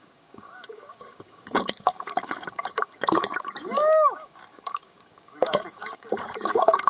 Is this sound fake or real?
fake